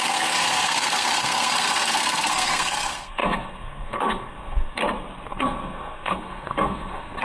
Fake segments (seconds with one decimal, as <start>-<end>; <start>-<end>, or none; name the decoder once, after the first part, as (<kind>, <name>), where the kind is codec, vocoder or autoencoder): 0.0-4.8 (codec, SNAC); 5.3-7.2